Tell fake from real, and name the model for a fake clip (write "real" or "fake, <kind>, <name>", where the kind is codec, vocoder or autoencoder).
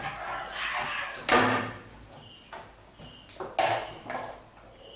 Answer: real